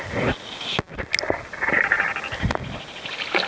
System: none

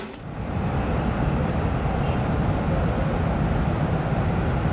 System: none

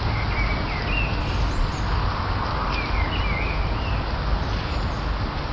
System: none